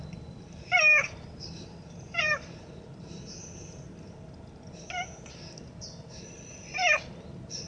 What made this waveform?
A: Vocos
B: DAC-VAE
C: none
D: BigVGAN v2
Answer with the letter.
C